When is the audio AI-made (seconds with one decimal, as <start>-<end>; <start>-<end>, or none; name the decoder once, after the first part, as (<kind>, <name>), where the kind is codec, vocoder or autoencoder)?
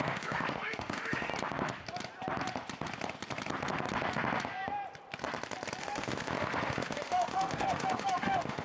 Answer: 0.0-1.3 (autoencoder, DAC-VAE); 5.8-8.6